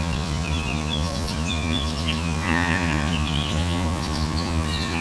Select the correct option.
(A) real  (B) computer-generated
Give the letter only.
B